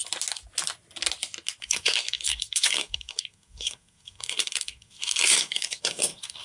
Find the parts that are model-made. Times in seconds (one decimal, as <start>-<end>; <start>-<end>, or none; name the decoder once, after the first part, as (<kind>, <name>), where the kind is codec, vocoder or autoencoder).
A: 1.6-6.4 (codec, SNAC)